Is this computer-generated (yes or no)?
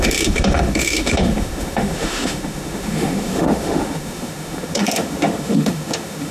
yes